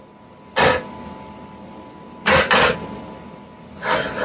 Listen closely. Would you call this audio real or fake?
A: real